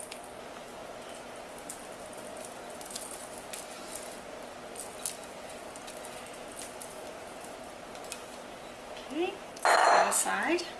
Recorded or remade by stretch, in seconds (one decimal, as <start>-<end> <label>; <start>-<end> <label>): 0.0-10.8 recorded